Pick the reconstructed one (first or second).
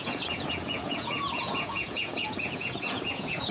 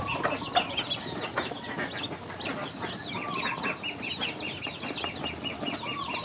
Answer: first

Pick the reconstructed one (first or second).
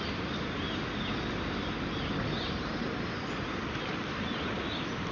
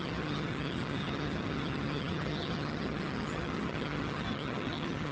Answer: second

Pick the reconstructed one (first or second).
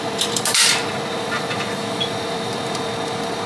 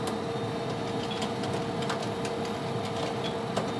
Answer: first